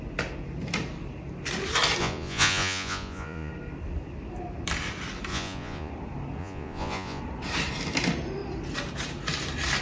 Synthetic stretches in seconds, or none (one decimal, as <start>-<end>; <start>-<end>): 2.0-3.5; 5.3-5.9; 6.4-7.2